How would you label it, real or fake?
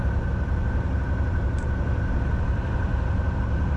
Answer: fake